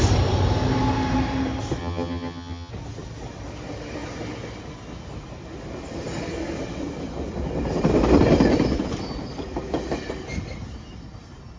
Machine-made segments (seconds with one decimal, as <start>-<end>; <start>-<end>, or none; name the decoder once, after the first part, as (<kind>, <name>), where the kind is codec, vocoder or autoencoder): 1.8-2.7 (vocoder, HiFi-GAN)